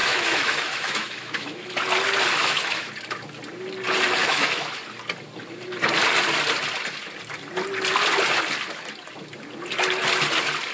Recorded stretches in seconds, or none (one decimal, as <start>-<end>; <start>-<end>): 1.7-2.4; 2.9-4.2; 4.8-10.7